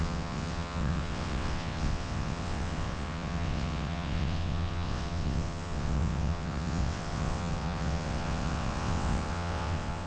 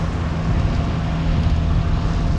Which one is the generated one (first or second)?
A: first